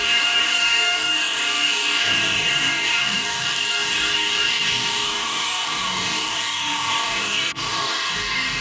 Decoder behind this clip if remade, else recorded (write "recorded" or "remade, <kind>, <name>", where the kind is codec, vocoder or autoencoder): remade, codec, DAC